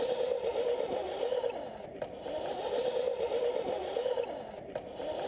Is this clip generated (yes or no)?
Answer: no